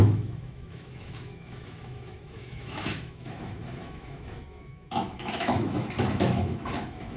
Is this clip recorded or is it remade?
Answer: remade